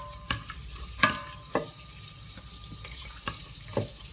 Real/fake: fake